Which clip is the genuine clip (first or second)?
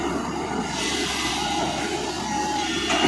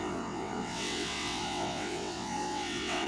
first